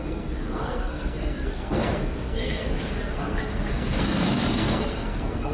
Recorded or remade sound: remade